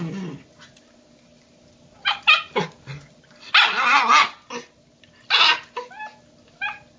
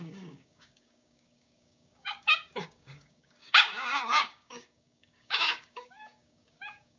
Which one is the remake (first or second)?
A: second